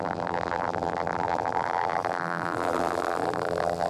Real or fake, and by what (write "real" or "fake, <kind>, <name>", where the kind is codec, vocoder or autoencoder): fake, vocoder, BigVGAN v2